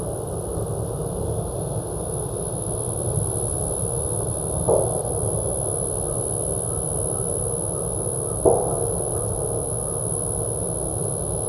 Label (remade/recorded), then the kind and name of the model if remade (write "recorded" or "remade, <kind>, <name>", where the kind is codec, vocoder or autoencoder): recorded